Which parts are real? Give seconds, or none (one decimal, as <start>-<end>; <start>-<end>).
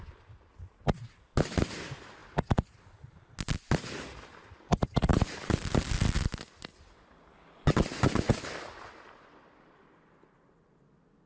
0.0-5.1; 5.9-11.3